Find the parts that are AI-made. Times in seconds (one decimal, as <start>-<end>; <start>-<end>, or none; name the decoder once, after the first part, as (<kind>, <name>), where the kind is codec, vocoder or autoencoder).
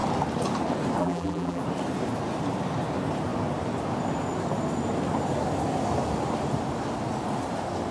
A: 1.0-1.6 (vocoder, BigVGAN v2)